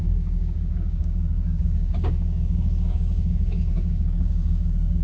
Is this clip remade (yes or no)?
yes